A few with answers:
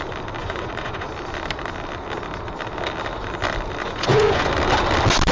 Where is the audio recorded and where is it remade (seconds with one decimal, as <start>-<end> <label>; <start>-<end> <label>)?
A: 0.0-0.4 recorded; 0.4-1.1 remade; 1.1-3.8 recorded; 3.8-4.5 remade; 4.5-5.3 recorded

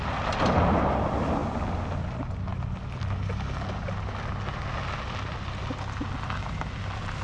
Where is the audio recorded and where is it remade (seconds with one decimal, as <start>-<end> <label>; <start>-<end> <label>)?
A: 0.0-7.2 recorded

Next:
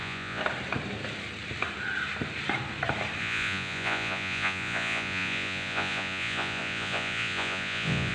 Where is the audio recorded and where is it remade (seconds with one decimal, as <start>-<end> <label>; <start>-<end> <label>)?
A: 0.0-0.4 remade; 0.4-3.2 recorded; 3.2-8.1 remade